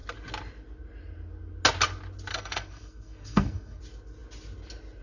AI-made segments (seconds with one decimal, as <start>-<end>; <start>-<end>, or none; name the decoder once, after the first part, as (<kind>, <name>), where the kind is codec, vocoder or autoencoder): 2.3-3.8 (codec, SNAC)